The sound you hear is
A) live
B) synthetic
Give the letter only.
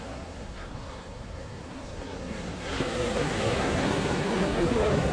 B